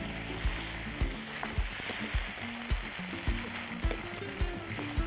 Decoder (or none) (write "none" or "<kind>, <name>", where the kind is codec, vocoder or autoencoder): none